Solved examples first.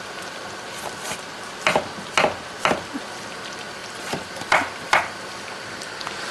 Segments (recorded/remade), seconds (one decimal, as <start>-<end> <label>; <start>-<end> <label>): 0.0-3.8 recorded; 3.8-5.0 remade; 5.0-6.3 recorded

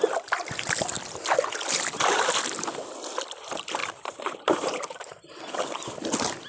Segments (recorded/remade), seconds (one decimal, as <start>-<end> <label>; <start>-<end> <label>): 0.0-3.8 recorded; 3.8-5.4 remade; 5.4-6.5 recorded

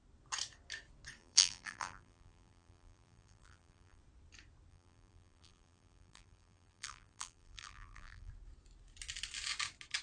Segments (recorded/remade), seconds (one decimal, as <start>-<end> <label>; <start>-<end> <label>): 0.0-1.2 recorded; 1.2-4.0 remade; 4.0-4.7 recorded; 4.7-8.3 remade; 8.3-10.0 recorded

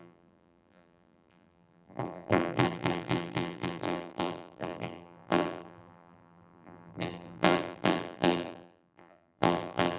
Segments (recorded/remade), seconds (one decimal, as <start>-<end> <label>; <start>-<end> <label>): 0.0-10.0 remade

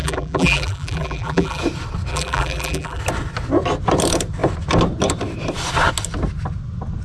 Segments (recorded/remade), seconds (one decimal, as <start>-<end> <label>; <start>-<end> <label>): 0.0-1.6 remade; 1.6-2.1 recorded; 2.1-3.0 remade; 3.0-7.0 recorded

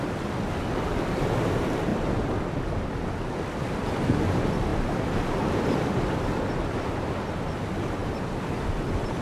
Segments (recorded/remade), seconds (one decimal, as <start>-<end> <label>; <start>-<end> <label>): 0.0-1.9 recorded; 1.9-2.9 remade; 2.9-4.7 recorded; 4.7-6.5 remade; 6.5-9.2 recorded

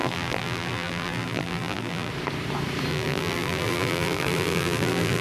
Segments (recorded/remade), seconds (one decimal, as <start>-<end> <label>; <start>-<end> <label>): 0.0-2.1 remade; 2.1-2.9 recorded; 2.9-5.2 remade